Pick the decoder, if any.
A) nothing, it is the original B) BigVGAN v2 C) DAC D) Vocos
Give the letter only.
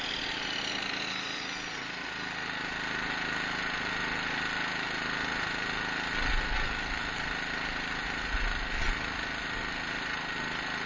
A